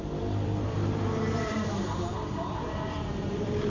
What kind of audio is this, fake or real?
fake